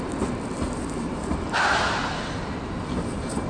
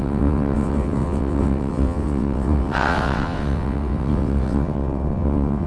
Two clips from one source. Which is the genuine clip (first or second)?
first